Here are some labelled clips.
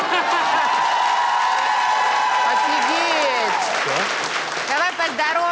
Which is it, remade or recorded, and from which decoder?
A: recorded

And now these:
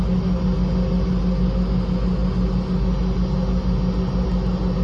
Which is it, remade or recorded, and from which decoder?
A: recorded